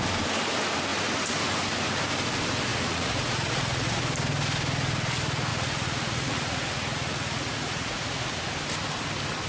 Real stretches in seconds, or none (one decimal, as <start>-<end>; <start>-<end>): 0.0-2.7; 4.0-5.5; 8.3-9.5